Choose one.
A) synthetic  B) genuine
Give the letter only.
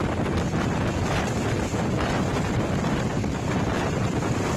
A